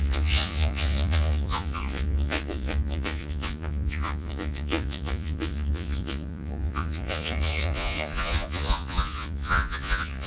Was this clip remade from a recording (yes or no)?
yes